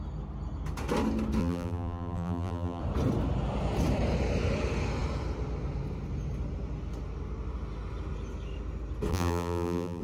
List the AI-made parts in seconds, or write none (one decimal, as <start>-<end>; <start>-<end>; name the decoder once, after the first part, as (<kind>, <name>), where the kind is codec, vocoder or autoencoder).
1.4-2.8 (vocoder, BigVGAN v2); 9.1-10.0